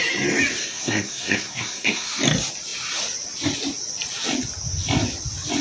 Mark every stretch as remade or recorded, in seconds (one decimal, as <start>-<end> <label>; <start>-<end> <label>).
0.0-0.6 recorded; 0.6-2.1 remade; 2.1-5.6 recorded